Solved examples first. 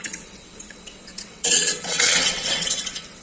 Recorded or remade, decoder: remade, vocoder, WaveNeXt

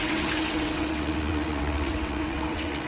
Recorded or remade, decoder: remade, vocoder, WaveNeXt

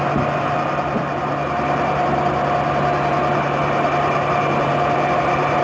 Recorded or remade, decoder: recorded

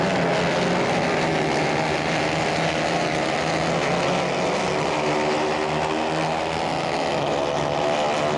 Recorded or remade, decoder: recorded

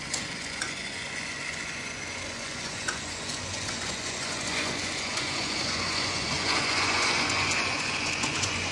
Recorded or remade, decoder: remade, vocoder, Vocos